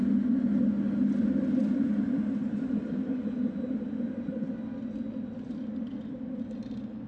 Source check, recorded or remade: recorded